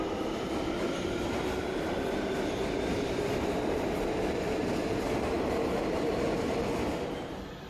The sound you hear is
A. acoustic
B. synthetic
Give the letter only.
A